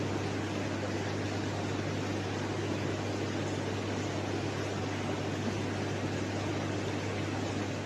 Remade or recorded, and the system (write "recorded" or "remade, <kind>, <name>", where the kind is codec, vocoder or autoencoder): recorded